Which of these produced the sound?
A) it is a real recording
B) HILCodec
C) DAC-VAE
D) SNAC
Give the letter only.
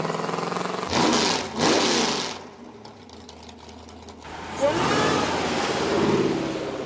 A